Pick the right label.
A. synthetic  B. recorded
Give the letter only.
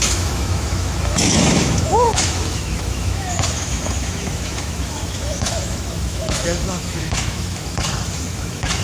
A